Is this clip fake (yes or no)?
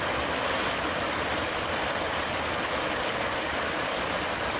no